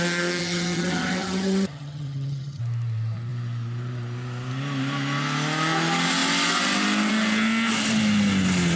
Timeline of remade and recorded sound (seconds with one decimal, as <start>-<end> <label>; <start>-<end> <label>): 0.0-0.4 recorded; 0.4-2.6 remade; 2.6-8.8 recorded

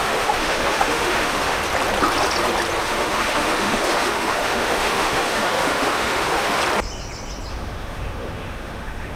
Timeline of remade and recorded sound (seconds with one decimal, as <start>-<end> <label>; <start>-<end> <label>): 0.0-1.6 remade; 1.6-2.8 recorded; 2.8-6.6 remade; 6.6-7.5 recorded; 7.5-9.2 remade

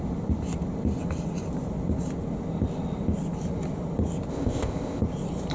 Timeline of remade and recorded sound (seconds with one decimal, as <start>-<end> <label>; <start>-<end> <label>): 0.0-4.3 recorded; 4.3-5.0 remade; 5.0-5.5 recorded

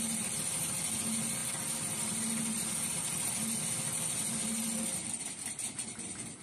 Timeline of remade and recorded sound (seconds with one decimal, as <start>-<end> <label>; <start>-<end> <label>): 0.0-6.4 recorded